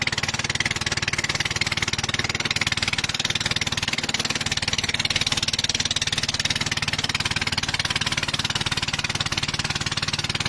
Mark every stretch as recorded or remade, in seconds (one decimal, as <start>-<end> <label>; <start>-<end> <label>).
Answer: 0.0-10.5 recorded